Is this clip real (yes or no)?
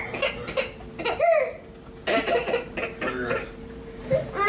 yes